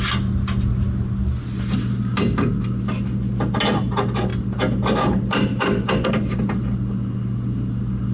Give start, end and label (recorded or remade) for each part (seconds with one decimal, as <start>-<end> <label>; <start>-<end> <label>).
0.0-8.1 recorded